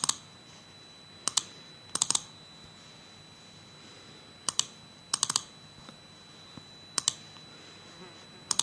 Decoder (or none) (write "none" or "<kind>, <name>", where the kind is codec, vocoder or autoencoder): none